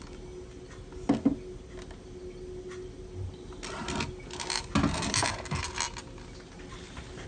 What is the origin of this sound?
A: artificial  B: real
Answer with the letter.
B